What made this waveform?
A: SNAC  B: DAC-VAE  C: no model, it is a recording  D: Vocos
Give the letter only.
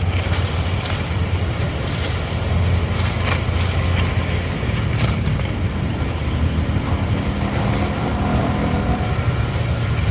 C